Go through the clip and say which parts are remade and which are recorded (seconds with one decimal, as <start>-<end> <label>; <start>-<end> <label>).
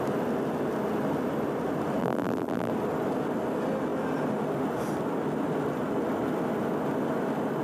0.0-2.0 recorded; 2.0-2.7 remade; 2.7-7.6 recorded